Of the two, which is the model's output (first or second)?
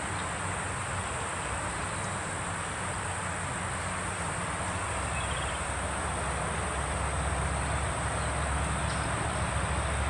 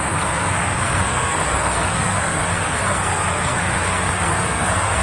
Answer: second